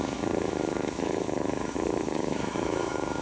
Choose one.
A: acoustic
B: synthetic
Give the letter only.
B